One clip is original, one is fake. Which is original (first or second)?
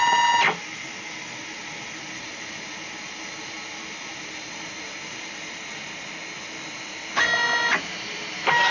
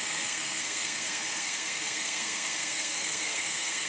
first